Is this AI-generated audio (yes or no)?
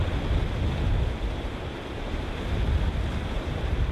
yes